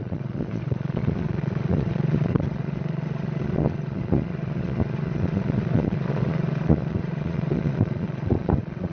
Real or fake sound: fake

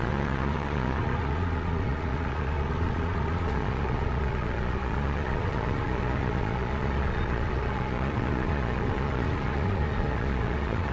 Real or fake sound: fake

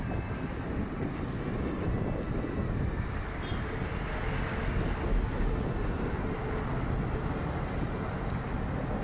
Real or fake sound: real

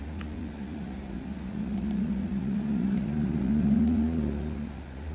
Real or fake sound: fake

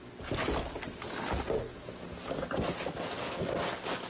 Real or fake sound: real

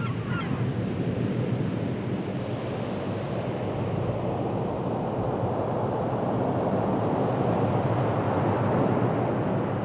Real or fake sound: real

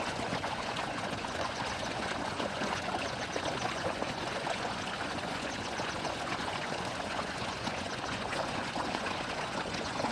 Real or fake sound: fake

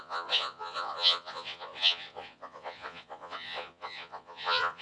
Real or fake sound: fake